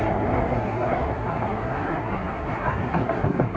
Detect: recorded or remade remade